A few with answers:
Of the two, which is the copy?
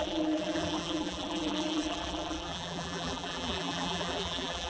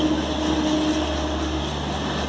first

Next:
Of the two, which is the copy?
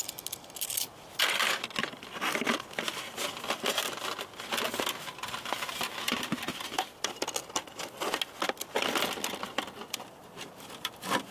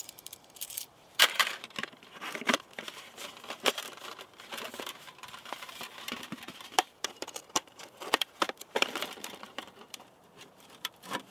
second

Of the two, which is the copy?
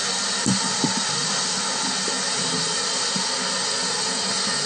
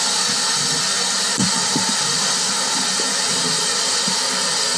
second